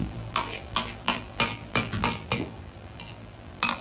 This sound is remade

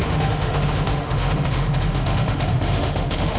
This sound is remade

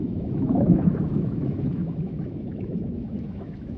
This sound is remade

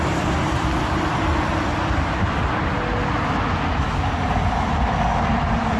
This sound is recorded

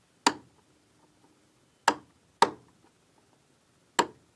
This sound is recorded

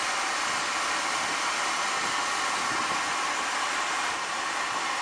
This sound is recorded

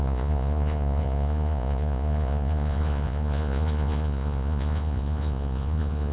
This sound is remade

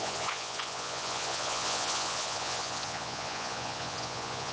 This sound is remade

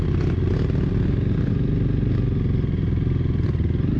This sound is recorded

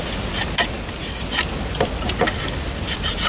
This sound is recorded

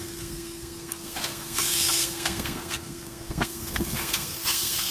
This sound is remade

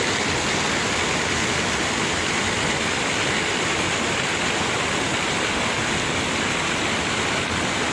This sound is recorded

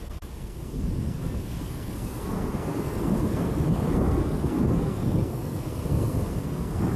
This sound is remade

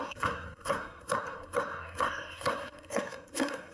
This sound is remade